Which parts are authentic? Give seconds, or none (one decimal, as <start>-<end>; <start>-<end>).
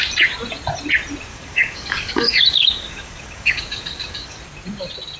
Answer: 0.0-1.3; 4.4-5.2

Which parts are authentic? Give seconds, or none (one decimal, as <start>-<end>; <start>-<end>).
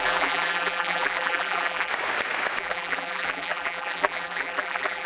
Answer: 1.9-2.6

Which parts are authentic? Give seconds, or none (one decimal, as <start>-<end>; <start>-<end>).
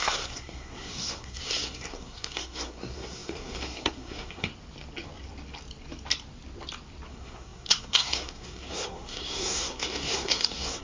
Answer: 4.5-7.1